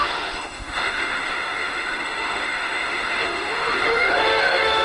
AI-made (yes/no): yes